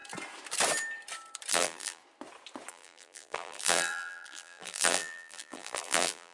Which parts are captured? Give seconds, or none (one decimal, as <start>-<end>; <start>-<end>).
0.0-1.5; 2.0-2.7

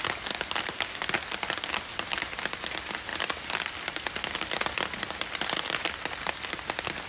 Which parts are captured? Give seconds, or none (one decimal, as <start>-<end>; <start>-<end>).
0.0-3.1; 6.5-7.1

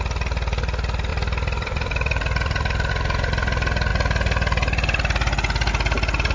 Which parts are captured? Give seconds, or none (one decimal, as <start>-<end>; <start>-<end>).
0.0-1.1; 2.9-6.3

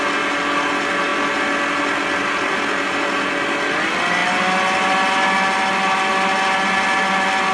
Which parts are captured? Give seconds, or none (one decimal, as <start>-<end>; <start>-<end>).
0.0-7.5

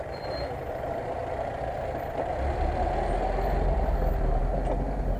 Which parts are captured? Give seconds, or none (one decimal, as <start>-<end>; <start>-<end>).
1.2-4.0; 4.4-5.2

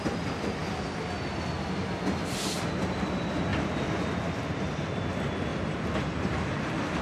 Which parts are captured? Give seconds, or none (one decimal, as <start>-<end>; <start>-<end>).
0.0-5.5

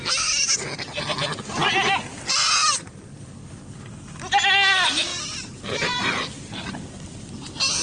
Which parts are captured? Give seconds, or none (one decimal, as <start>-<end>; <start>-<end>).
0.0-5.1; 7.3-7.8